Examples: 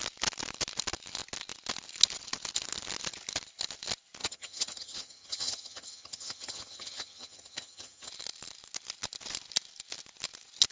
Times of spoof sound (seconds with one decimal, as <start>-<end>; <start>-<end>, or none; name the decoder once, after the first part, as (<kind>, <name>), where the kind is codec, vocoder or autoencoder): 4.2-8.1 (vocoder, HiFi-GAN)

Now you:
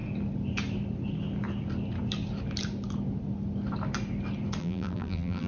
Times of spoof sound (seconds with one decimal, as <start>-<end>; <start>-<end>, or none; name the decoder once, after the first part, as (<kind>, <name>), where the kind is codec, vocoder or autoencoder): 4.6-5.5 (vocoder, BigVGAN v2)

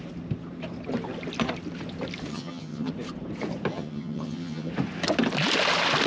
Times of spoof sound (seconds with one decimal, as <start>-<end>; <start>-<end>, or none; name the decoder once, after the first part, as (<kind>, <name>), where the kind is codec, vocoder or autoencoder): 2.3-2.9 (vocoder, HiFi-GAN); 3.7-4.7

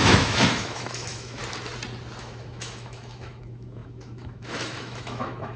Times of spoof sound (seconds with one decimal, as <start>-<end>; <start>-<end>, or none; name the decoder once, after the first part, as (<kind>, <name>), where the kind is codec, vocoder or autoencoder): 0.0-1.4 (autoencoder, DAC-VAE); 2.2-5.6

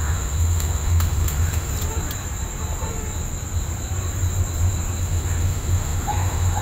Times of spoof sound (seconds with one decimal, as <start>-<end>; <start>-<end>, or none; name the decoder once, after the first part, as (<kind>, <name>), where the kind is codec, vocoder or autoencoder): 0.0-1.7 (autoencoder, DAC-VAE); 5.0-6.6

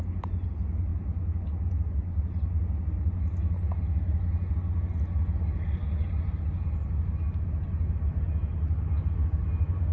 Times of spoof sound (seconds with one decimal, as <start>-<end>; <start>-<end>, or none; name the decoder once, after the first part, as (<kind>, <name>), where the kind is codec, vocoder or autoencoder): none

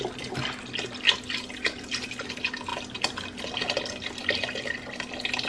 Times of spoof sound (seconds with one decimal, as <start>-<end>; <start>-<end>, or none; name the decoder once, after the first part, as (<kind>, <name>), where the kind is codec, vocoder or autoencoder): none